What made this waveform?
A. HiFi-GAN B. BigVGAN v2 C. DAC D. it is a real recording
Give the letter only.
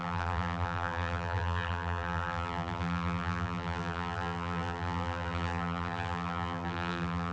B